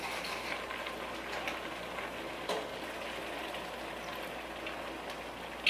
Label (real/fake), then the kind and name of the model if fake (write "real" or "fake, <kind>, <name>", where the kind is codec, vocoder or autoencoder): real